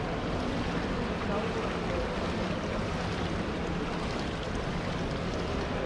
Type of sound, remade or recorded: recorded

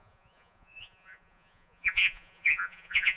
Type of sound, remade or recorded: remade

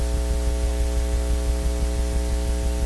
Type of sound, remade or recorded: recorded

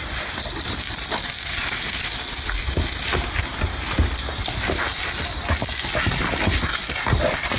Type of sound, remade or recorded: recorded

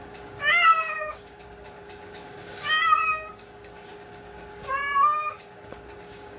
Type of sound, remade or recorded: remade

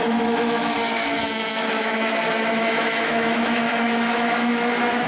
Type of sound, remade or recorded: remade